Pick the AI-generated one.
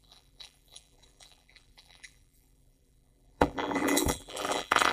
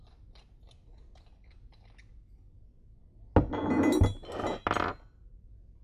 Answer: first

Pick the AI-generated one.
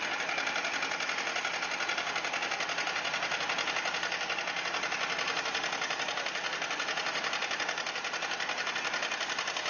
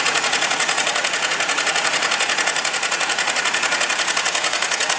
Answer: second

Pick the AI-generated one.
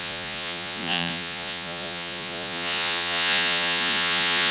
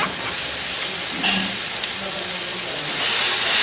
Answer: first